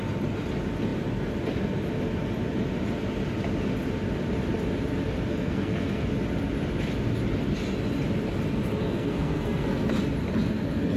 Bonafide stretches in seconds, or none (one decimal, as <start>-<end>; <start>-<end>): 0.0-5.3; 6.1-8.8; 9.9-11.0